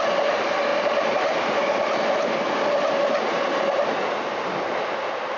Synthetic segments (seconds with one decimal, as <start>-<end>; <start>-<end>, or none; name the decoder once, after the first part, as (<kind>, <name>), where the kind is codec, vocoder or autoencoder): none